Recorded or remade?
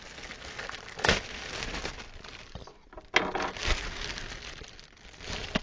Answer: recorded